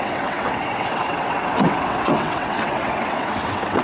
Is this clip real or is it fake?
fake